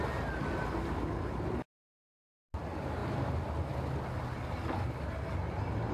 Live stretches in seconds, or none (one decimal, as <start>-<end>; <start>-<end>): 0.0-5.9